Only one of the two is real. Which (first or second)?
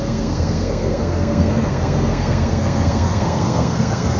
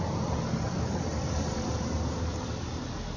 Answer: second